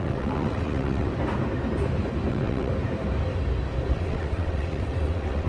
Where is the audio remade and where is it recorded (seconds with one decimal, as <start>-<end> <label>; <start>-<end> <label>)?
0.0-1.1 remade; 1.1-2.3 recorded; 2.3-2.7 remade; 2.7-3.9 recorded; 3.9-5.5 remade